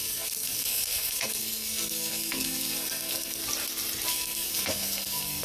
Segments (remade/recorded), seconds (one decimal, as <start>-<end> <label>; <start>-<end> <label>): 0.0-3.4 remade; 3.4-4.1 recorded; 4.1-5.4 remade